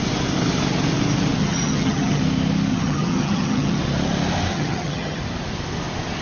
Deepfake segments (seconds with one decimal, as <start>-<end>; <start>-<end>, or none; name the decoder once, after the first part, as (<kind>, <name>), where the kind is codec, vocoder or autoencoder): 1.4-2.2 (vocoder, HiFi-GAN); 2.7-3.8; 4.5-5.2